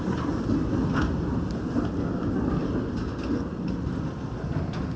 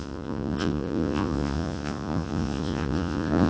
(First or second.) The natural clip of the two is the first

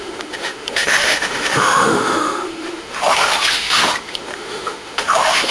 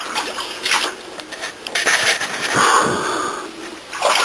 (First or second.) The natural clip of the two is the second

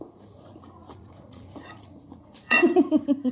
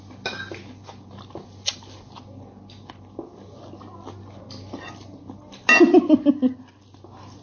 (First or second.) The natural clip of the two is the second